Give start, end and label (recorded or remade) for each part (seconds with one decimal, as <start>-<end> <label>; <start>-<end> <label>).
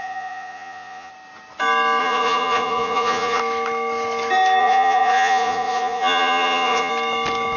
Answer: 0.0-1.1 remade; 1.1-2.0 recorded; 2.0-3.4 remade; 3.4-4.6 recorded; 4.6-6.9 remade; 6.9-7.6 recorded